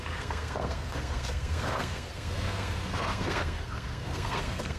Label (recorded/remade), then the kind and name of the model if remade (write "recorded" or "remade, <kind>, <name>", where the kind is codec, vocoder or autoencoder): remade, codec, SNAC